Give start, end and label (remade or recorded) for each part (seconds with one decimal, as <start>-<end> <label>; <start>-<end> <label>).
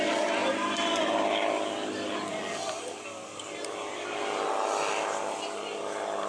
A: 0.0-6.3 recorded